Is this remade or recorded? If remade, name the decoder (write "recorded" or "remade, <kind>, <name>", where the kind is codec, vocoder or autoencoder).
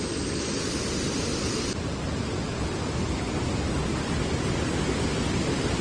recorded